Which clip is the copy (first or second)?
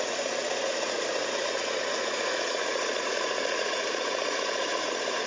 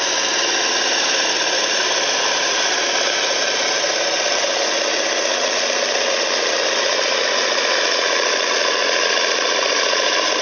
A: first